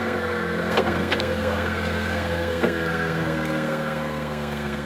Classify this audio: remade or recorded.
remade